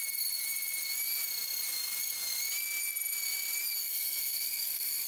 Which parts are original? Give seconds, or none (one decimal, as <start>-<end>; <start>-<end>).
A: 0.0-3.8